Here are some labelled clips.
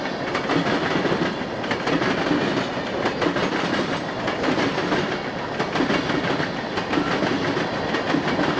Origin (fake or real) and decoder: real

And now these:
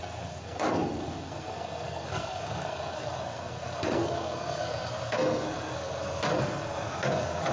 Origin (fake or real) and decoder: fake, codec, SNAC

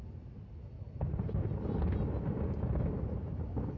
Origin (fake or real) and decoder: real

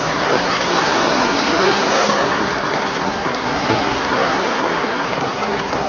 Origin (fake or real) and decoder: fake, codec, SNAC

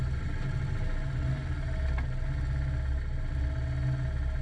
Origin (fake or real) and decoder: real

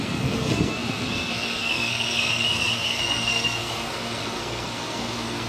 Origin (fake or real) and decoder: fake, codec, SNAC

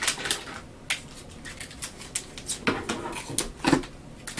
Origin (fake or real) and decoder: real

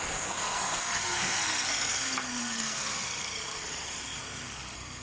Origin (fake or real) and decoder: fake, codec, SNAC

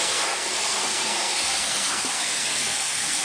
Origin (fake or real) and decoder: fake, codec, SNAC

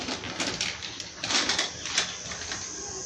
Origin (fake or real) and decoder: real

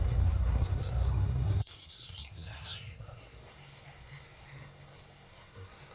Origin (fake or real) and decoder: fake, codec, SNAC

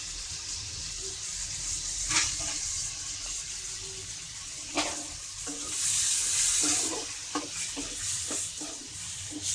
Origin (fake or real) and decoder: real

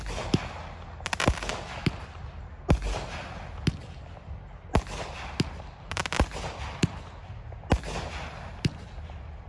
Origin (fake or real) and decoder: real